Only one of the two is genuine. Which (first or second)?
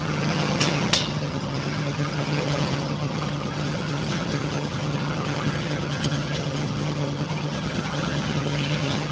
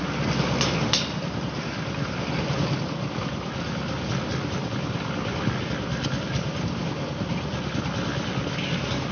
second